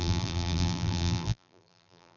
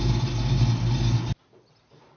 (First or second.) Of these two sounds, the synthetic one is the first